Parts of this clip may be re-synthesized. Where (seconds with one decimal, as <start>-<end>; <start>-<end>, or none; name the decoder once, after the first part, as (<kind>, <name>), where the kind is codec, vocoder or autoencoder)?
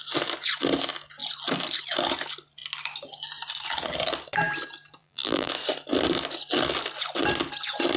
5.0-5.5 (vocoder, BigVGAN v2)